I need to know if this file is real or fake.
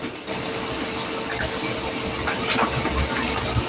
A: real